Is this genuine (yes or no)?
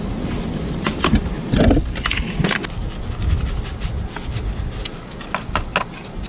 yes